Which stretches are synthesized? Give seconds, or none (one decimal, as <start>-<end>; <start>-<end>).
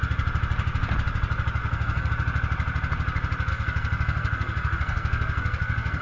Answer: 1.6-2.1; 3.5-6.0